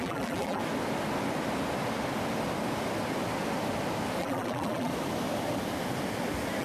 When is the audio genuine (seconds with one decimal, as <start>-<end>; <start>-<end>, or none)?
0.6-4.2; 4.9-6.6